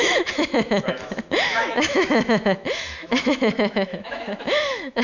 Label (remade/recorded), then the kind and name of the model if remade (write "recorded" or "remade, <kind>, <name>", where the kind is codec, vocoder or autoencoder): remade, autoencoder, DAC-VAE